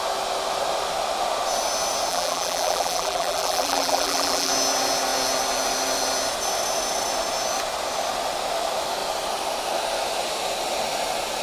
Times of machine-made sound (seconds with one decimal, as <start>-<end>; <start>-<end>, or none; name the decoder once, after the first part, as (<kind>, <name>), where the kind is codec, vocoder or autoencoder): 2.1-4.5 (vocoder, BigVGAN v2)